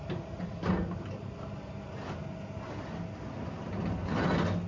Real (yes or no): yes